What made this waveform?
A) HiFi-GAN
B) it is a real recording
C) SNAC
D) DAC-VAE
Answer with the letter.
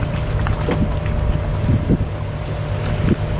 B